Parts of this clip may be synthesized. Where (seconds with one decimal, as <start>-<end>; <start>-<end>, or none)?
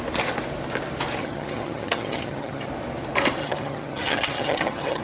1.2-2.7; 3.4-5.0